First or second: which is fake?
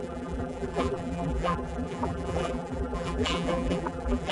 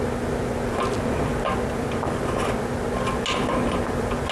first